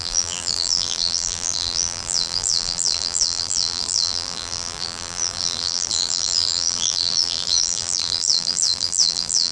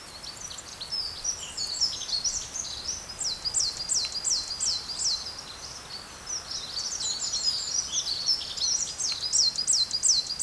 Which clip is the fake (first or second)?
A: first